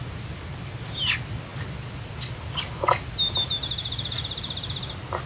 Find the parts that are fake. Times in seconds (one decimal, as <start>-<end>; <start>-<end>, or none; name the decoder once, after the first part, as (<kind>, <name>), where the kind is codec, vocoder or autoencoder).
none